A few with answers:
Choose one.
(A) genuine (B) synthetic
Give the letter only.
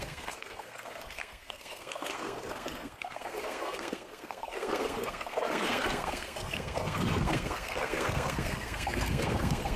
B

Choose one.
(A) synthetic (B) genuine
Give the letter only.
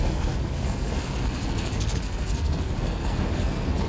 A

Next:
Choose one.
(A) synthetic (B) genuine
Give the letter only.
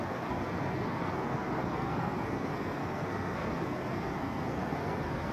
A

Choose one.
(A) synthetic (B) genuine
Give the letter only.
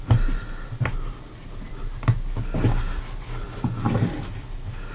B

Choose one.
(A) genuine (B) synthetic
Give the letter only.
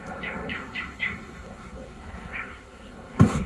B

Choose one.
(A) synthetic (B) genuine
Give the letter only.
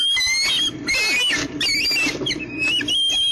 B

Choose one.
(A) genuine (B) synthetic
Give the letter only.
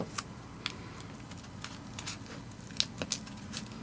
A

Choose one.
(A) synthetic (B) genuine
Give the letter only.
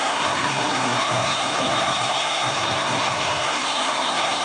A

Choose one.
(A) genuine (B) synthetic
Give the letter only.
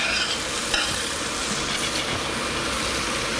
A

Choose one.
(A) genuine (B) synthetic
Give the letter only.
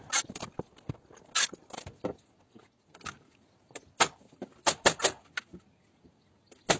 A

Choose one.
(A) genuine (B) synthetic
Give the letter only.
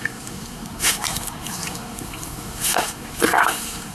B